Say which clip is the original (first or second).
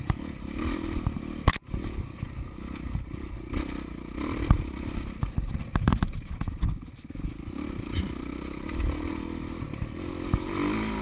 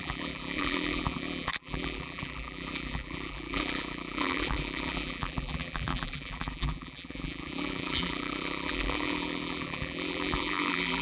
first